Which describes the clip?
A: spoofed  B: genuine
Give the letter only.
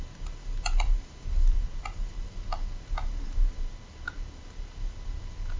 B